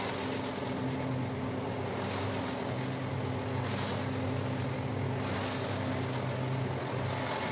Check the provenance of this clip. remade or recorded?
recorded